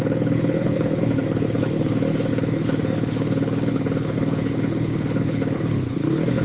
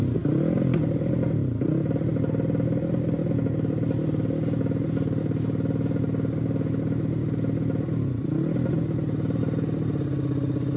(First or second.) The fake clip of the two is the first